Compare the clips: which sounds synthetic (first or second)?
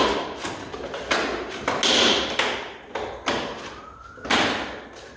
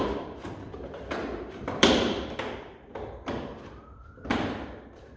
second